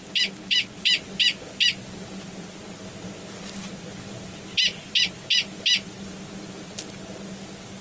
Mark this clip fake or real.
real